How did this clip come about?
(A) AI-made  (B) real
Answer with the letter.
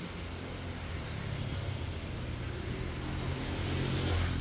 B